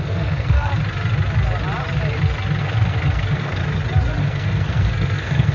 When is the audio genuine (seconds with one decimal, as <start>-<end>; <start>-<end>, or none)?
0.7-2.6; 3.6-4.2